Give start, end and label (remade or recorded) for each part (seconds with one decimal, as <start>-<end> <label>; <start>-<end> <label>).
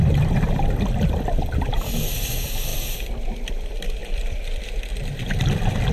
0.0-5.9 remade